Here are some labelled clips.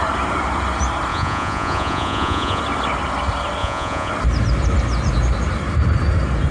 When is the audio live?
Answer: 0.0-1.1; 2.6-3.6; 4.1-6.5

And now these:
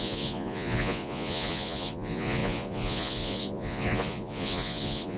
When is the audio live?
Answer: none

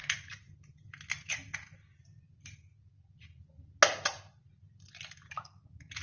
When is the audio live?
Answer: 0.0-6.0

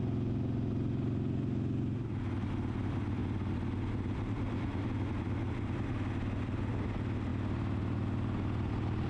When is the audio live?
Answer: 0.0-9.1

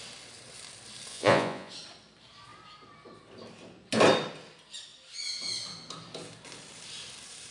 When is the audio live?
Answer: 0.0-1.1; 1.7-7.5

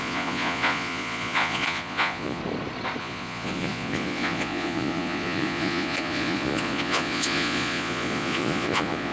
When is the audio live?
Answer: 2.4-3.0

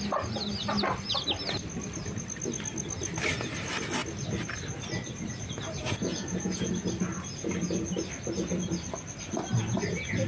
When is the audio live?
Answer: 0.0-6.1; 6.7-10.3